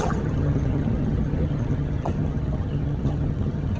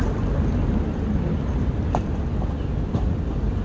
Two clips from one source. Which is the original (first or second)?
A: second